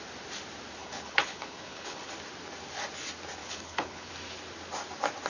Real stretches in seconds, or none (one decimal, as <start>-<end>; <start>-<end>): 0.0-0.8; 2.1-3.4; 4.1-5.3